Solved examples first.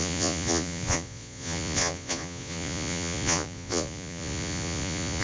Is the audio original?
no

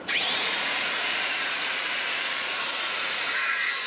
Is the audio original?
no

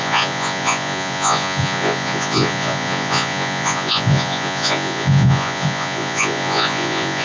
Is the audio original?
no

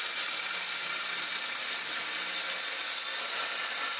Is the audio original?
yes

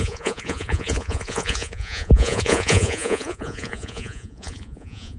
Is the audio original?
no